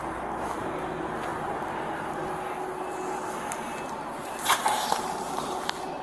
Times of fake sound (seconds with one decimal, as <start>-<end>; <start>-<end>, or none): none